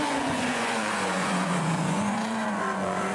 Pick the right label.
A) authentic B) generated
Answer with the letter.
B